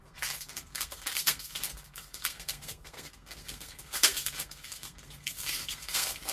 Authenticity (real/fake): fake